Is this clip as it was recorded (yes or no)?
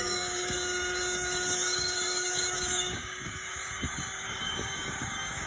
no